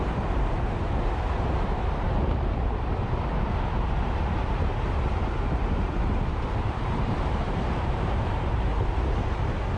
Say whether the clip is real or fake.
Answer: fake